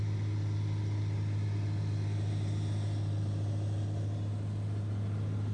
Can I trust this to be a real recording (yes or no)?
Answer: yes